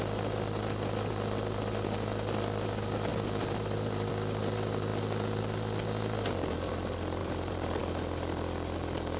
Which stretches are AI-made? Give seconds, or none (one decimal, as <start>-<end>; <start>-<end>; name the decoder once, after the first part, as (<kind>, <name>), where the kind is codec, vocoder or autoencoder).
3.1-4.1 (vocoder, BigVGAN v2); 7.2-7.8